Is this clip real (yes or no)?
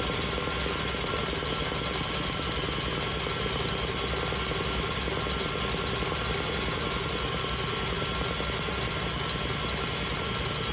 yes